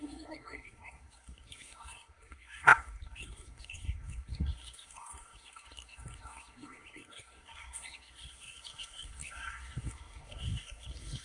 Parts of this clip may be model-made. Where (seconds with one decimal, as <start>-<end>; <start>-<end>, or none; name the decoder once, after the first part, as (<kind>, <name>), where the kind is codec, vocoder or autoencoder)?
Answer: 0.0-11.2 (codec, SNAC)